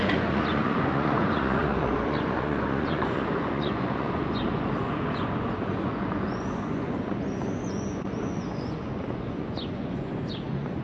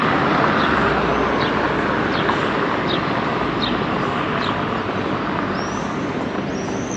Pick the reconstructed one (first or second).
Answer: first